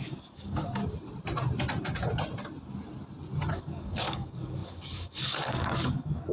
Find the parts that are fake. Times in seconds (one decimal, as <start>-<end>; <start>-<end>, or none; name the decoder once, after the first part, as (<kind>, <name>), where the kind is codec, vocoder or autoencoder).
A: 0.0-0.8 (codec, DAC); 3.5-6.3